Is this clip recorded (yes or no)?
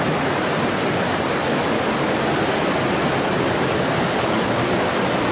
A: yes